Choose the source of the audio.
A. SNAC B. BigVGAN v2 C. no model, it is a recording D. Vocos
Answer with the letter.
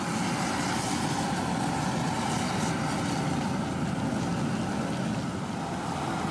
C